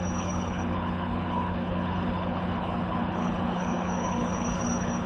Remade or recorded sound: remade